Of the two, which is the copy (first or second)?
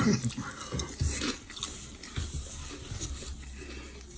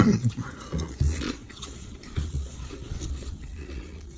second